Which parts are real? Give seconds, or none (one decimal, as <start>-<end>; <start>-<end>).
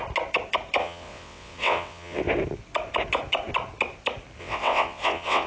0.0-0.8; 2.2-4.4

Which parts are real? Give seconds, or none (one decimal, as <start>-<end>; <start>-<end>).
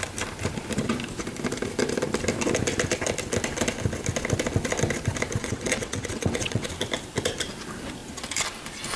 0.0-5.4; 6.7-9.0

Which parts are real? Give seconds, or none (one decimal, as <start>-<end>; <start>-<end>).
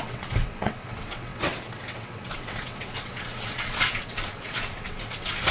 none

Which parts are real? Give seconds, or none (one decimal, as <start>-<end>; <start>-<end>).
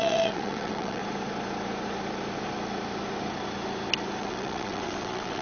1.0-4.2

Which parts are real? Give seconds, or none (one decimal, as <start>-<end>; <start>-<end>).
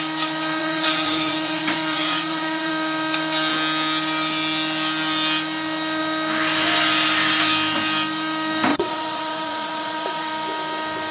0.0-0.6; 2.7-8.7; 10.3-11.1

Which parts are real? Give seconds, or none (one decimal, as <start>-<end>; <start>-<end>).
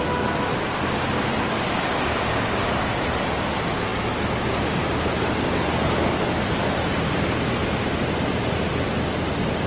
0.0-9.7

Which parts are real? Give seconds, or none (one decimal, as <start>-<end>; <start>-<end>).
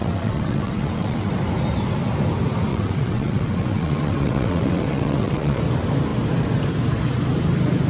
1.3-2.7; 5.6-7.9